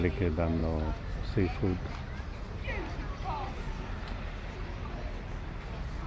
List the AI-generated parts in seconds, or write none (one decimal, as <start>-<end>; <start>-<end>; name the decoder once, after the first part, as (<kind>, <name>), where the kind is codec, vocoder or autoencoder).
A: none